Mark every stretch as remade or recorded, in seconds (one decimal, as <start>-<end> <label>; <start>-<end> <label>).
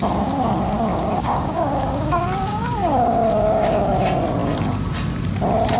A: 0.0-0.9 recorded; 0.9-3.9 remade; 3.9-5.8 recorded